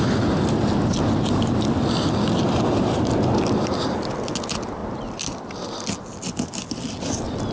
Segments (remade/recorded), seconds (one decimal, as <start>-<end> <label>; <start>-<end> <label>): 0.0-7.5 recorded